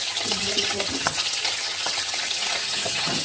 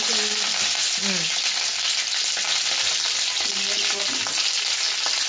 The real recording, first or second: second